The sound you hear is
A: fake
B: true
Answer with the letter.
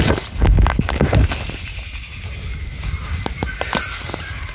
B